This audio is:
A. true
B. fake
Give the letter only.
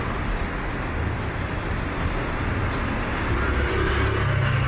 A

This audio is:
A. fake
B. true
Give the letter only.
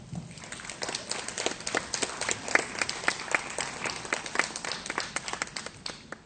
B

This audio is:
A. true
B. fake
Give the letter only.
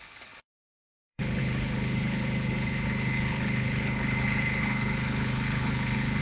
B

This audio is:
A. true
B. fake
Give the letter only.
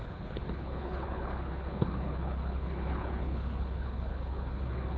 B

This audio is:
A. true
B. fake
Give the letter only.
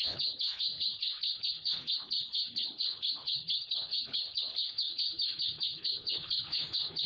B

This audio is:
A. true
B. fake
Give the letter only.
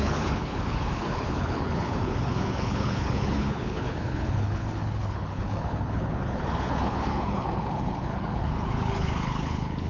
B